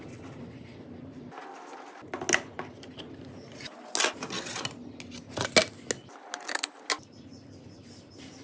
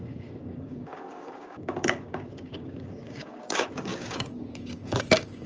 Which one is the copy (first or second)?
second